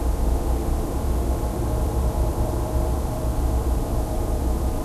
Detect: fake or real fake